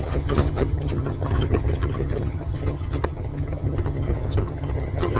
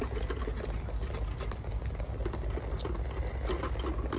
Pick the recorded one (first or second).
second